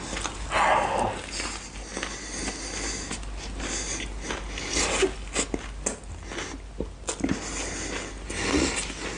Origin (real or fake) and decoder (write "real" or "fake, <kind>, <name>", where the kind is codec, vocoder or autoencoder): real